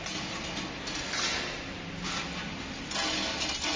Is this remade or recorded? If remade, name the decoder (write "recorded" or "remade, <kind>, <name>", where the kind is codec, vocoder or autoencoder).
recorded